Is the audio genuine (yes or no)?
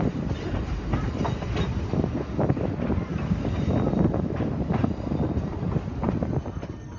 yes